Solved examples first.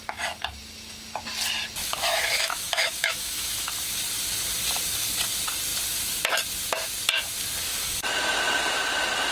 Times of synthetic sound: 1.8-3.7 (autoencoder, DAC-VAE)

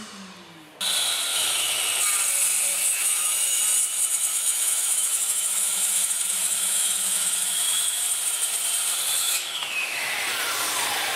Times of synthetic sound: 1.3-1.8 (autoencoder, DAC-VAE); 2.7-3.6; 4.3-8.0; 9.2-10.1